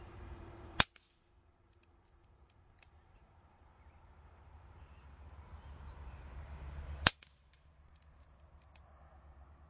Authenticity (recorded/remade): remade